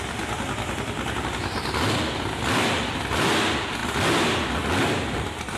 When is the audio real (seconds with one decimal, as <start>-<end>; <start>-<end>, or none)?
0.0-5.6